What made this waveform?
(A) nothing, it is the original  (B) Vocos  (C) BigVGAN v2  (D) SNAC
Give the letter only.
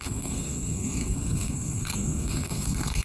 D